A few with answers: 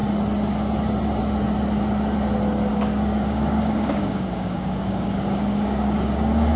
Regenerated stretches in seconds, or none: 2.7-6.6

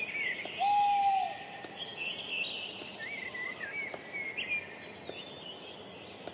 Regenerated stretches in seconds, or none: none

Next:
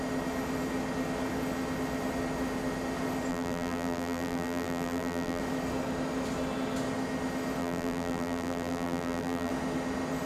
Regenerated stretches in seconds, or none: 3.3-5.4; 7.6-9.5

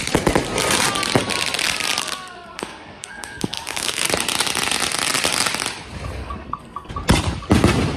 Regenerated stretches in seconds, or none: 2.0-4.1; 6.2-6.9

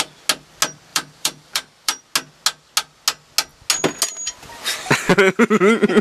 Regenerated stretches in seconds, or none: 0.9-2.0